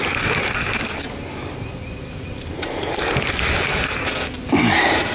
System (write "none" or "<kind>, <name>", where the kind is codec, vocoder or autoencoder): none